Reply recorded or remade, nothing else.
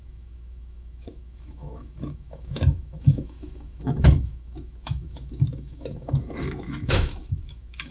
remade